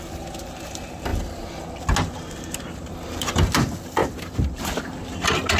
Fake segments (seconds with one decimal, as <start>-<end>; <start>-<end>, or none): none